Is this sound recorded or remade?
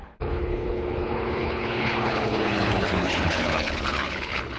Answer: remade